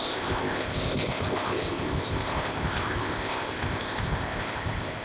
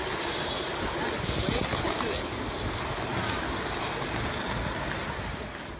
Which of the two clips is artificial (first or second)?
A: first